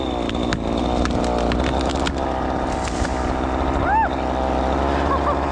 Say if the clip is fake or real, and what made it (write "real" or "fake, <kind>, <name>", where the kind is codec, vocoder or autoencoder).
real